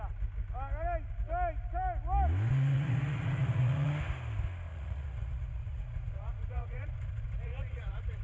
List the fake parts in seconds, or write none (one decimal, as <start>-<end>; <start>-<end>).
2.5-3.9; 4.7-8.2